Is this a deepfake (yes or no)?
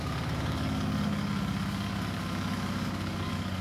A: yes